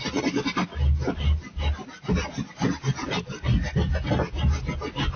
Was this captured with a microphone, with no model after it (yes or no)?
yes